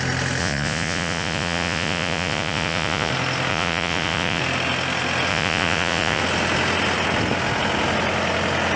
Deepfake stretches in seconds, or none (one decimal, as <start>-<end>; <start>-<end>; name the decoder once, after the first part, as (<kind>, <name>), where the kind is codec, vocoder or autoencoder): 0.4-3.1 (vocoder, Vocos); 3.5-4.4; 5.3-6.2